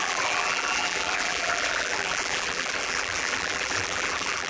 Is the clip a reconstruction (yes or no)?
yes